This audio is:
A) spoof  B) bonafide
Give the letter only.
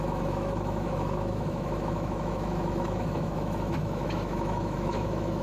A